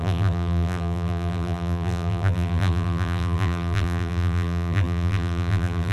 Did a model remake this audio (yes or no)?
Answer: yes